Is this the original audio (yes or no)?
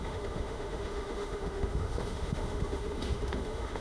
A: no